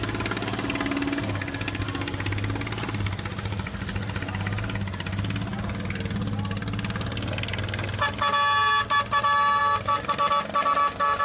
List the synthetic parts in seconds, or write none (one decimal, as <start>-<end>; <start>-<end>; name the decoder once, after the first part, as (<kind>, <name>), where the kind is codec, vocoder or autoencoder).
none